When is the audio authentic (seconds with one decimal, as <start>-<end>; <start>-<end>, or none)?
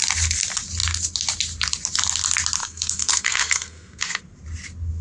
0.0-2.6; 4.2-5.0